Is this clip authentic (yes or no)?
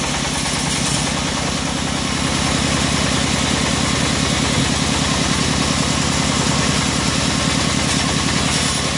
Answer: yes